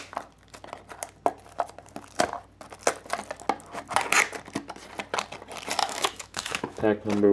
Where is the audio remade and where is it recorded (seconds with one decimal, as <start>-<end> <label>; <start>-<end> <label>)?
0.0-5.8 recorded; 5.8-6.8 remade; 6.8-7.3 recorded